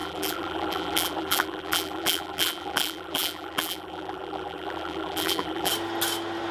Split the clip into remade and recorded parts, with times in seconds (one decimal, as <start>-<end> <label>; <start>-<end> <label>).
0.0-5.7 remade; 5.7-6.5 recorded